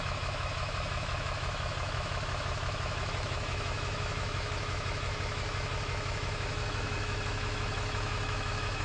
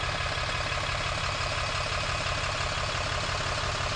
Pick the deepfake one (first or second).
first